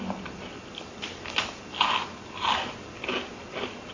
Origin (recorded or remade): recorded